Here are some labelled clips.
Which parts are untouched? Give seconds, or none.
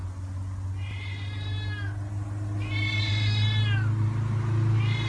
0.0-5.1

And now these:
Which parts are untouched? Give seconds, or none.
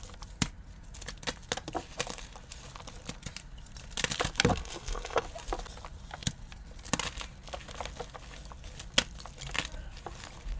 0.0-4.5; 5.2-10.6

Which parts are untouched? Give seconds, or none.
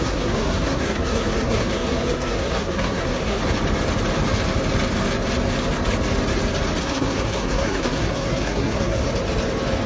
3.4-6.8; 9.0-9.9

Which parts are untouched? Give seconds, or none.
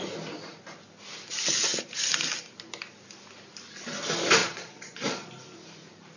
0.0-4.4; 5.3-6.2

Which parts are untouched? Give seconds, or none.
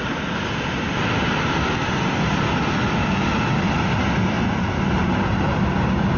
0.0-6.2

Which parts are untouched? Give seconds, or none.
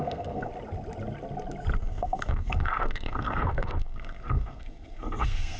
0.5-1.8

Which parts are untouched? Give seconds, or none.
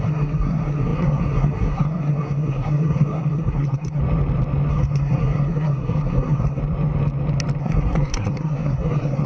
4.0-4.7; 6.6-7.6